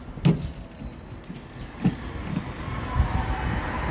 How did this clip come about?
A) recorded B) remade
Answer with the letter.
A